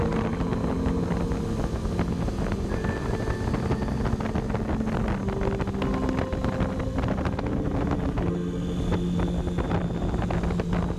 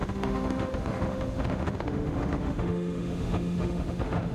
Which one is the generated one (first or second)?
second